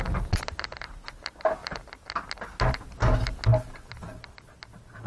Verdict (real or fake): real